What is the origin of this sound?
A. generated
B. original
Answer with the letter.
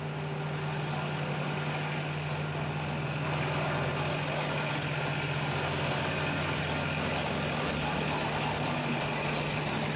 B